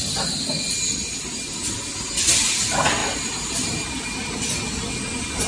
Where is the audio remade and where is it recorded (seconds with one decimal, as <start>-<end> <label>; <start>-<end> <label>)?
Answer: 0.0-3.0 recorded; 3.0-4.9 remade; 4.9-5.5 recorded